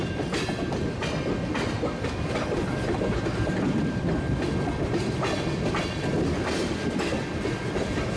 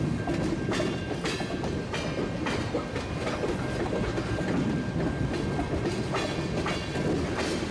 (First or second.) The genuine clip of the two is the second